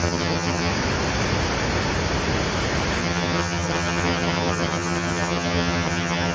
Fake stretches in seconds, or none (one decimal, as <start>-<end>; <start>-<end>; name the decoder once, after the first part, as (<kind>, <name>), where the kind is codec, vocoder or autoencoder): 0.0-0.7 (vocoder, HiFi-GAN); 3.0-6.3